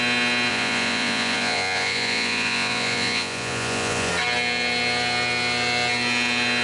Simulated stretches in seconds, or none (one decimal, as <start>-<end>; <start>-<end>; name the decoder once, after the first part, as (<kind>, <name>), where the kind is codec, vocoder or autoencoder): 0.5-4.1 (vocoder, Vocos)